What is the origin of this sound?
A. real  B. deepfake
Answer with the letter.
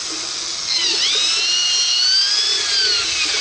A